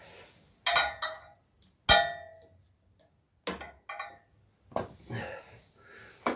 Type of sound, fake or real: real